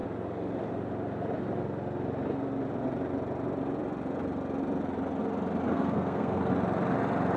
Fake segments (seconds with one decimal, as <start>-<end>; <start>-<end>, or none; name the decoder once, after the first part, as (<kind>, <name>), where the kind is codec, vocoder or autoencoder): 5.7-6.5 (codec, SNAC)